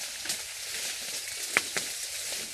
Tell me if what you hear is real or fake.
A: real